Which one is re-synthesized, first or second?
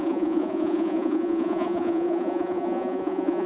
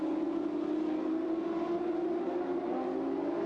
first